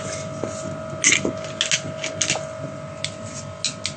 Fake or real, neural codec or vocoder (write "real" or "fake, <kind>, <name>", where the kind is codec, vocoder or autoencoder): real